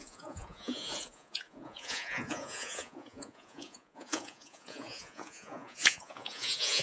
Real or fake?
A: fake